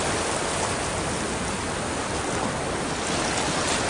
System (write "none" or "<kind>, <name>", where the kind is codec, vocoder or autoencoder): none